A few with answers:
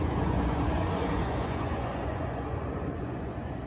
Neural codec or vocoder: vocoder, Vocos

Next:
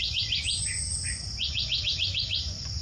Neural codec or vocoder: vocoder, Vocos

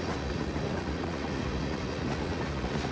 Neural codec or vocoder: vocoder, Vocos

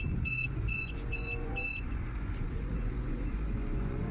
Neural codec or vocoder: vocoder, Vocos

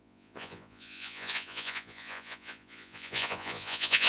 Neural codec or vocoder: vocoder, Vocos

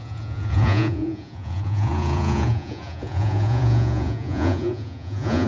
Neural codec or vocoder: vocoder, Vocos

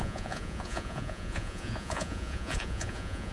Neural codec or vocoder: vocoder, Vocos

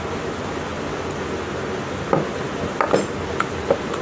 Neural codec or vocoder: none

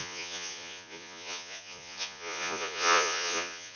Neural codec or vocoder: vocoder, Vocos